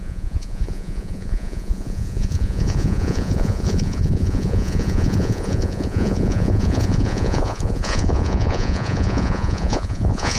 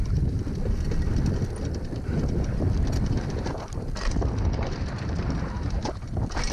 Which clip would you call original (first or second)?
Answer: second